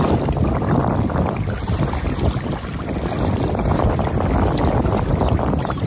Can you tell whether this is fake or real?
real